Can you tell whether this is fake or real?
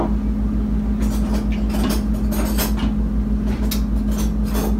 real